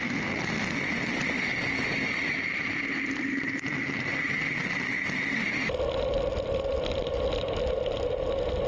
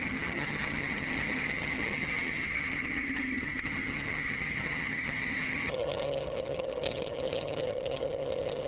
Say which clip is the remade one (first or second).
second